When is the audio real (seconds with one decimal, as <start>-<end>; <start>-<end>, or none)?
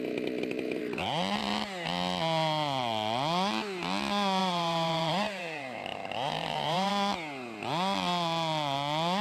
0.0-4.4; 6.9-9.2